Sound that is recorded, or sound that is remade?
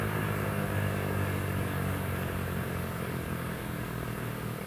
remade